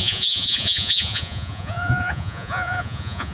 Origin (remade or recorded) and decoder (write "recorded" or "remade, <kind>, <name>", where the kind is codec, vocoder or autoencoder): remade, vocoder, Vocos